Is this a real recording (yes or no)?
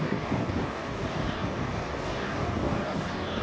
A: no